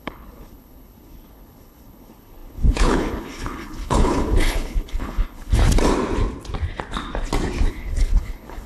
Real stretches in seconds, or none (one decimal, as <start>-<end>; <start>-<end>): 5.6-7.7